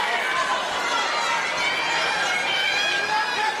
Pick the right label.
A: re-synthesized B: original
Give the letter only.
B